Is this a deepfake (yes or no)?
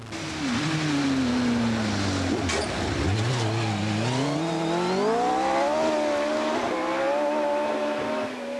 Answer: no